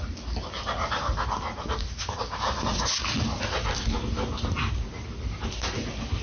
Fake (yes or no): no